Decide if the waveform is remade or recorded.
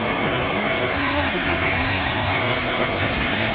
remade